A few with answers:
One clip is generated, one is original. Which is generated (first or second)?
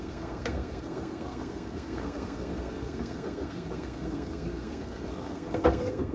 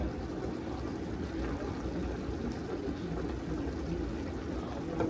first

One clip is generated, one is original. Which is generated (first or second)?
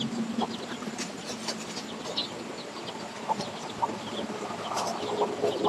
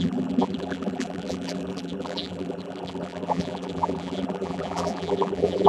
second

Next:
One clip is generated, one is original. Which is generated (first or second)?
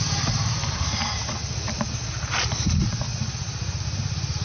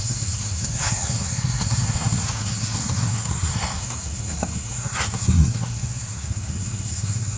second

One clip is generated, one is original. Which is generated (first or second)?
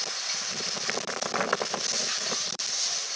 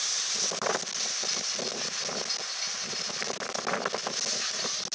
first